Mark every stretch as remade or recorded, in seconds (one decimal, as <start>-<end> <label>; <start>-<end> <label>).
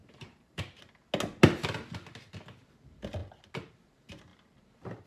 0.0-0.6 remade; 0.6-5.1 recorded